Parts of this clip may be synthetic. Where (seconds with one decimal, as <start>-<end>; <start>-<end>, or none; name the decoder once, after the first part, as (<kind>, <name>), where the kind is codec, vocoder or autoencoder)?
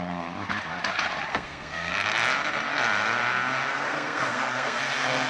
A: 1.3-1.9 (codec, SNAC); 3.7-4.8